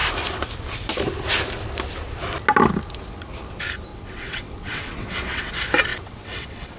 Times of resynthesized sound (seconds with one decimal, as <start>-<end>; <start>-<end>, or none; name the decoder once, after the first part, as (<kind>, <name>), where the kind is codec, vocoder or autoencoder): 3.9-5.5 (vocoder, WaveNeXt); 5.9-6.8